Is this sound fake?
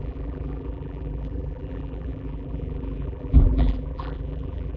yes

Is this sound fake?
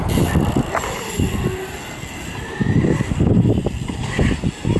no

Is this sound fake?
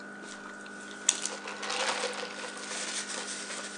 no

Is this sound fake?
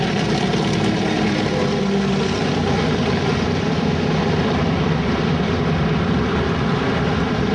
yes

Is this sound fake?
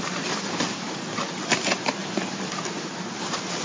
yes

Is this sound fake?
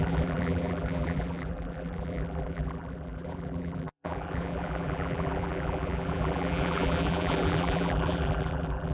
yes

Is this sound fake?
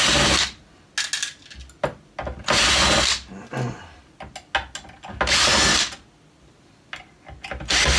no